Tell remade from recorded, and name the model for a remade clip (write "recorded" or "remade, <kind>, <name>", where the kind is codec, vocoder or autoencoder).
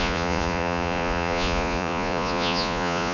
remade, vocoder, Vocos